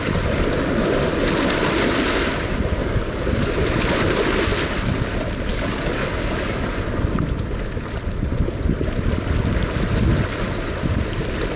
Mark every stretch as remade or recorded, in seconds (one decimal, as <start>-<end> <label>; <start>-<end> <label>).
0.0-2.8 recorded; 2.8-3.5 remade; 3.5-5.5 recorded; 5.5-6.7 remade; 6.7-11.6 recorded